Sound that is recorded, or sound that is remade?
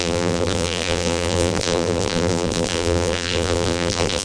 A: remade